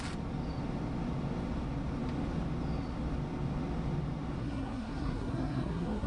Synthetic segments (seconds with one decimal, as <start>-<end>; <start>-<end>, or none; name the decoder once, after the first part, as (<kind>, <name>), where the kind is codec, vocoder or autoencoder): 4.4-6.1 (codec, SNAC)